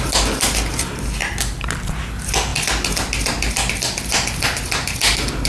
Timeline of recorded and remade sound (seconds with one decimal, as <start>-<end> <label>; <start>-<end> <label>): 0.0-1.2 remade; 1.2-2.0 recorded; 2.0-2.5 remade; 2.5-3.7 recorded; 3.7-5.5 remade